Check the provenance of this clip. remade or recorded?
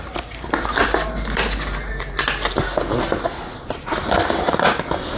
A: recorded